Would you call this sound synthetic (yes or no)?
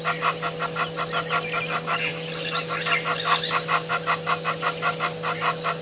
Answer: no